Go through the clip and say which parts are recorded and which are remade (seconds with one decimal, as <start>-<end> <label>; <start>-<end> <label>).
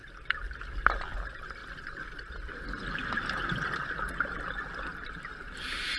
0.0-6.0 recorded